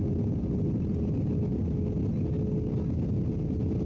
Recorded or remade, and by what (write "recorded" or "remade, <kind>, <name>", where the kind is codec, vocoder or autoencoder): recorded